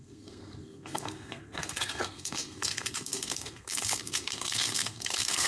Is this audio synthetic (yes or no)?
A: yes